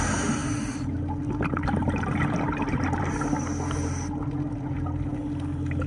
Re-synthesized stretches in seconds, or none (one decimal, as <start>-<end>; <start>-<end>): none